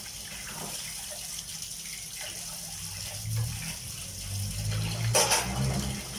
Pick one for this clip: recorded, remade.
recorded